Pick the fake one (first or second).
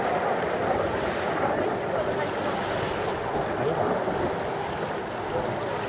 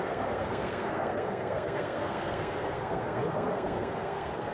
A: second